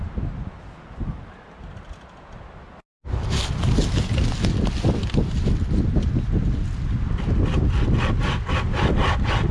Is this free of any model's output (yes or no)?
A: yes